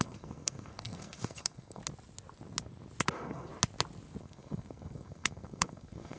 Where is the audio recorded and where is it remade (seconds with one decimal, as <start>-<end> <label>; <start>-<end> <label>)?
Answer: 0.0-1.8 remade; 1.8-3.1 recorded; 3.1-3.5 remade; 3.5-4.2 recorded; 4.2-6.2 remade

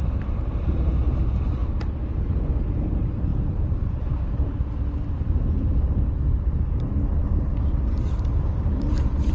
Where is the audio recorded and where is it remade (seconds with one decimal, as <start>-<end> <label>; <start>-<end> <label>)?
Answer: 0.0-1.6 remade; 1.6-2.6 recorded; 2.6-9.3 remade